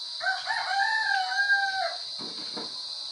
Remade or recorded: recorded